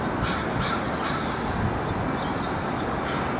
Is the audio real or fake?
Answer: real